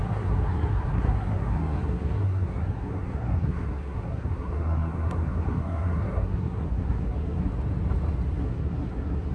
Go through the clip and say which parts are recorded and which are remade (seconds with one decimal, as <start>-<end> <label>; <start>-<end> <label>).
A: 0.0-7.5 remade; 7.5-8.4 recorded; 8.4-9.3 remade